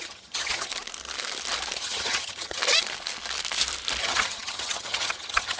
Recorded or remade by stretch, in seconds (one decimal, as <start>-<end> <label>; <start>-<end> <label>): 0.0-0.7 remade; 0.7-1.8 recorded; 1.8-2.6 remade; 2.6-4.0 recorded; 4.0-5.6 remade